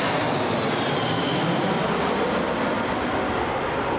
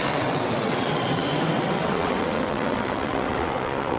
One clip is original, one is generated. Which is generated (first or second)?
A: second